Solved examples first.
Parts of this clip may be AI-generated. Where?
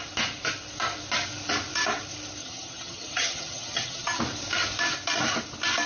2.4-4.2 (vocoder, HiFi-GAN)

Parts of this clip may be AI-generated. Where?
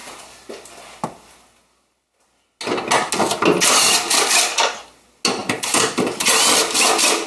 5.4-6.4 (vocoder, BigVGAN v2)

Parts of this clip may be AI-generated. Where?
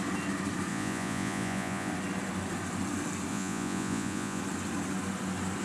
0.7-1.9 (vocoder, Vocos); 3.3-4.4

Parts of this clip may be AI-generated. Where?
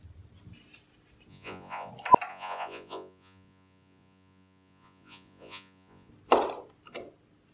1.3-1.9 (vocoder, Vocos); 2.3-6.1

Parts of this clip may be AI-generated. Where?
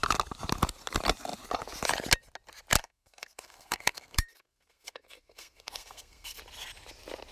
2.8-6.4 (codec, SNAC)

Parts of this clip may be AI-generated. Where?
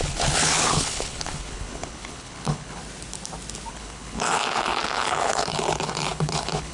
0.0-2.8 (codec, HILCodec); 3.7-6.7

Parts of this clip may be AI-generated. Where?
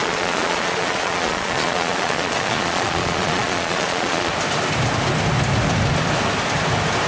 0.0-4.3 (vocoder, Vocos)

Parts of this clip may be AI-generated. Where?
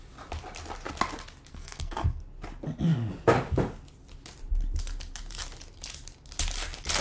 1.5-2.2 (codec, SNAC)